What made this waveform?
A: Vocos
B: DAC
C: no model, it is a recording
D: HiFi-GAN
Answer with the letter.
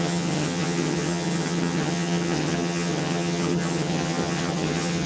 D